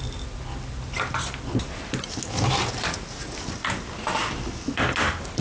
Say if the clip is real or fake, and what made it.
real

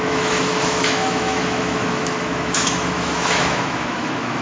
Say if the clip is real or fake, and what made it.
fake, autoencoder, DAC-VAE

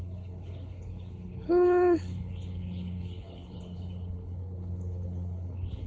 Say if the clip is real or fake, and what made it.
fake, codec, HILCodec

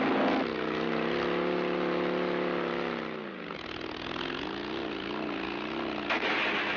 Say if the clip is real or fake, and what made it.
real